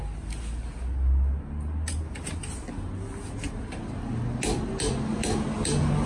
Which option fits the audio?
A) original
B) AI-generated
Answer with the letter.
A